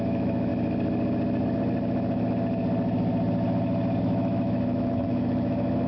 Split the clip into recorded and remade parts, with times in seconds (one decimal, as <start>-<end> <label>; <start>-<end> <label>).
0.0-0.5 remade; 0.5-4.0 recorded; 4.0-5.9 remade